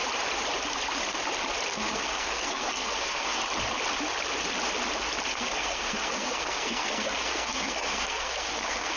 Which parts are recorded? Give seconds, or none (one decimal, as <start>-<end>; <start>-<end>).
0.0-1.7; 3.4-5.3